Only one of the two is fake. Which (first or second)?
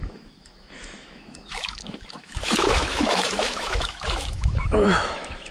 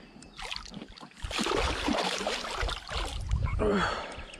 first